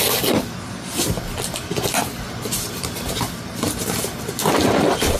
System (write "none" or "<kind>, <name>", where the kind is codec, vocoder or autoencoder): none